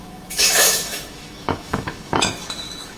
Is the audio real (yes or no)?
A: no